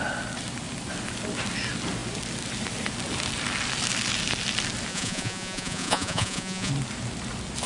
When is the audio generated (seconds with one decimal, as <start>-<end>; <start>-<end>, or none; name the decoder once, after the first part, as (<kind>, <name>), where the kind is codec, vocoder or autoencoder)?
4.9-6.7 (vocoder, Vocos)